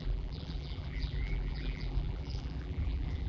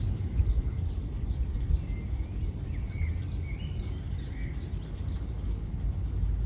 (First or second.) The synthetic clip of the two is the first